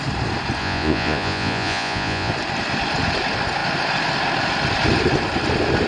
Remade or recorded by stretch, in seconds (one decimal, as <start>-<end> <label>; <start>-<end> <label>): 0.0-0.6 recorded; 0.6-2.3 remade; 2.3-5.9 recorded